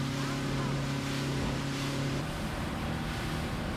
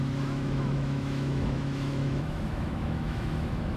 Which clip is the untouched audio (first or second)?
first